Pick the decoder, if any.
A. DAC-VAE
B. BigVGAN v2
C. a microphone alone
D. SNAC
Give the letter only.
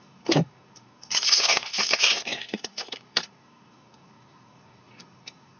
D